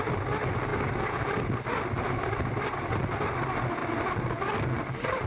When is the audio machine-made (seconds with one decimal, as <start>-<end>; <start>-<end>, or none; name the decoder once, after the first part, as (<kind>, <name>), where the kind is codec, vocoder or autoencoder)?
none